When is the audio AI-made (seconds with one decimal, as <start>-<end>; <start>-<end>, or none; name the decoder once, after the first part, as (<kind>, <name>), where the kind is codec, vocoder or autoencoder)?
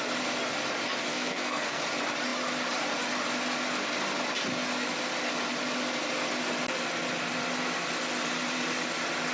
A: 1.1-1.8 (codec, SNAC)